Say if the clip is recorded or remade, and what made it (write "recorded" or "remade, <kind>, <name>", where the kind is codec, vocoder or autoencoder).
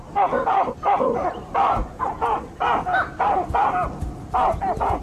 recorded